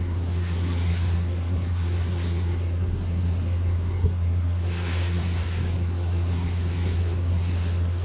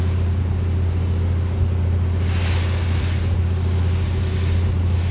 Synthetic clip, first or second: first